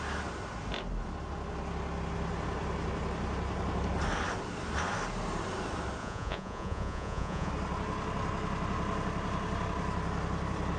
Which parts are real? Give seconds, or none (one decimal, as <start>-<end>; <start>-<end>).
0.0-6.0; 7.5-10.8